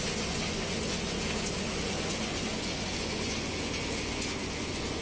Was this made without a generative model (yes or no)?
no